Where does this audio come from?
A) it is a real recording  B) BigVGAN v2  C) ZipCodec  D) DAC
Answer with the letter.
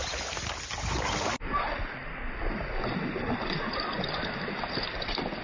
A